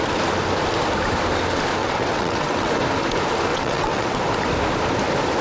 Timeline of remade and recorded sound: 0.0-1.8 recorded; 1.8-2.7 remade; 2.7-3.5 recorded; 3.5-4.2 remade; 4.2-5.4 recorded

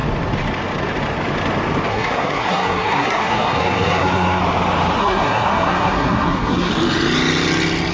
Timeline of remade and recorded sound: 0.0-1.9 recorded; 1.9-4.4 remade; 4.4-5.0 recorded; 5.0-6.7 remade; 6.7-7.9 recorded

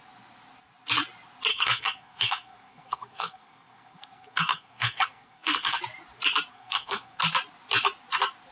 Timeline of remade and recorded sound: 0.0-1.5 recorded; 1.5-5.8 remade; 5.8-6.5 recorded; 6.5-7.2 remade; 7.2-8.5 recorded

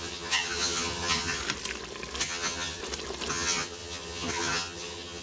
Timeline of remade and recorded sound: 0.0-1.4 remade; 1.4-2.2 recorded; 2.2-2.8 remade; 2.8-3.3 recorded; 3.3-5.2 remade

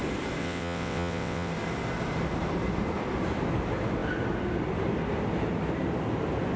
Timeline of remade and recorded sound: 0.0-0.4 recorded; 0.4-1.5 remade; 1.5-6.6 recorded

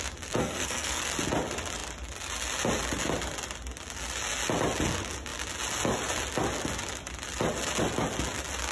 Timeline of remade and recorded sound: 0.0-0.4 recorded; 0.4-1.0 remade; 1.0-8.7 recorded

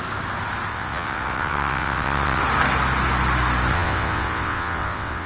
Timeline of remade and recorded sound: 0.0-0.7 recorded; 0.7-2.4 remade; 2.4-3.7 recorded; 3.7-5.3 remade